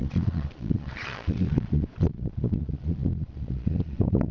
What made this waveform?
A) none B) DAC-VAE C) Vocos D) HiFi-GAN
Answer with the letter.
C